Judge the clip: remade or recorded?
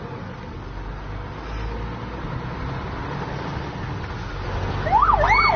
recorded